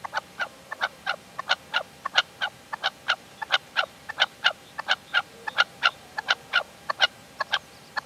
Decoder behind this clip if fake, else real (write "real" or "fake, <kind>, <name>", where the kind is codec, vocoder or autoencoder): fake, vocoder, BigVGAN v2